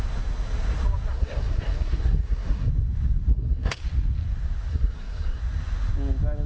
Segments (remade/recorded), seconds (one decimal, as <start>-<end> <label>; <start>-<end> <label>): 0.0-1.1 recorded; 1.1-2.7 remade; 2.7-3.3 recorded; 3.3-3.8 remade; 3.8-4.7 recorded; 4.7-5.4 remade; 5.4-6.5 recorded